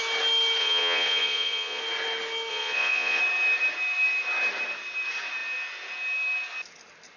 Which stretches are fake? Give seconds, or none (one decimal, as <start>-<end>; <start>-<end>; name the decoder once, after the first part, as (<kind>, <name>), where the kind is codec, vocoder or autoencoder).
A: 0.6-1.8 (vocoder, Vocos); 2.5-3.2